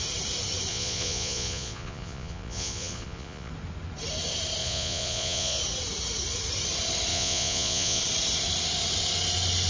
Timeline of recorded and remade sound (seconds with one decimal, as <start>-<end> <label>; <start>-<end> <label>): 0.0-0.7 recorded; 0.7-3.5 remade; 3.5-4.6 recorded; 4.6-5.6 remade; 5.6-7.1 recorded; 7.1-8.0 remade; 8.0-9.7 recorded